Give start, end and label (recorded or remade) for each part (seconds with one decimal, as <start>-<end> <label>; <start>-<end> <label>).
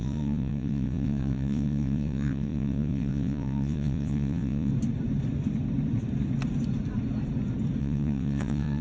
0.0-4.7 remade; 4.7-7.8 recorded; 7.8-8.8 remade